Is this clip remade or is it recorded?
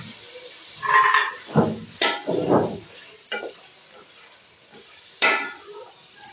remade